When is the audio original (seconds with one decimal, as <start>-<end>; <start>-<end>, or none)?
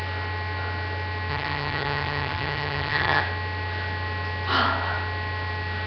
0.0-1.3; 3.2-5.9